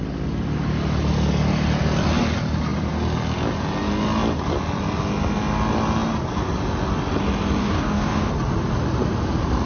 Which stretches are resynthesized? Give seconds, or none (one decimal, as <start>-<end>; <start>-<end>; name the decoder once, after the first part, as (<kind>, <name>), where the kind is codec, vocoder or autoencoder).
7.6-8.3 (codec, DAC)